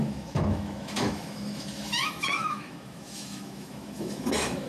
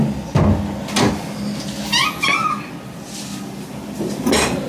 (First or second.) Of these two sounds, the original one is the second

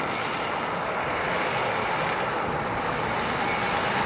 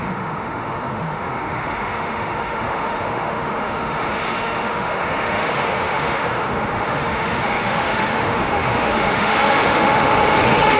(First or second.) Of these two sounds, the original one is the first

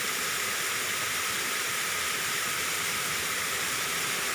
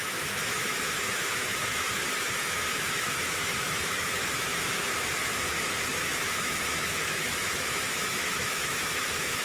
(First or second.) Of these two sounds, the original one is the first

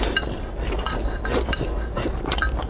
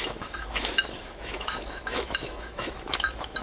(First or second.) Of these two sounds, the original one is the first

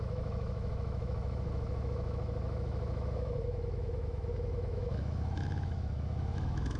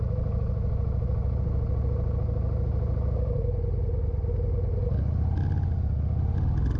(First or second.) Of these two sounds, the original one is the second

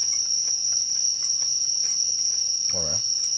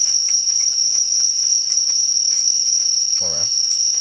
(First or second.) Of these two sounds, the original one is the first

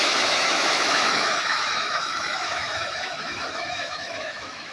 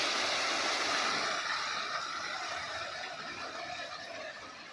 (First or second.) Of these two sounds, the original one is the second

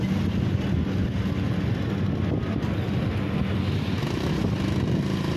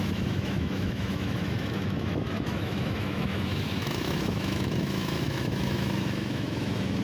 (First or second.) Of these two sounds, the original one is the first